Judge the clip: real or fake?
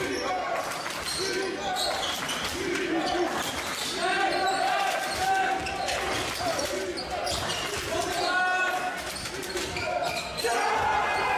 real